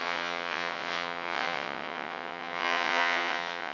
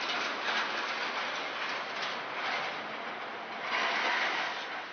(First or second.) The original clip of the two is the second